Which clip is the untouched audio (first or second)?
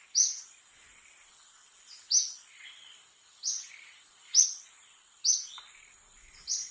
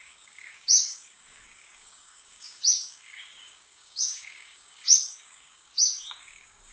first